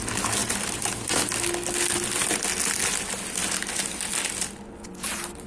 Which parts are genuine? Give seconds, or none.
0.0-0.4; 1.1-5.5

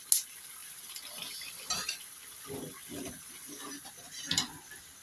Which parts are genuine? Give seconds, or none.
0.0-0.6; 1.9-2.8; 3.9-5.0